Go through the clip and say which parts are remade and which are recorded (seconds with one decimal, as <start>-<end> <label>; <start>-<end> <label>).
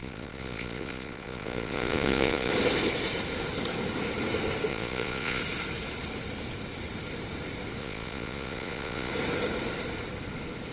0.0-2.5 remade; 2.5-4.7 recorded; 4.7-5.4 remade; 5.4-7.8 recorded; 7.8-9.1 remade; 9.1-10.7 recorded